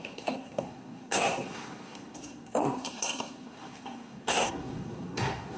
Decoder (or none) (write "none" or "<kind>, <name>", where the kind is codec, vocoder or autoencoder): codec, SNAC